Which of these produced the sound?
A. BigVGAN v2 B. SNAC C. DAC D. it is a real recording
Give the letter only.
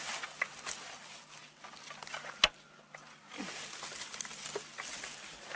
D